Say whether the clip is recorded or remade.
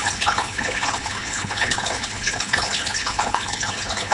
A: remade